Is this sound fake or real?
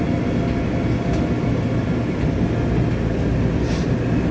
real